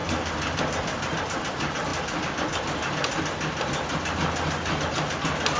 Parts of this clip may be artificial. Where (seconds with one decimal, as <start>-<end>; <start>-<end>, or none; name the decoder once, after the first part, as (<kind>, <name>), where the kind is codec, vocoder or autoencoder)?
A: none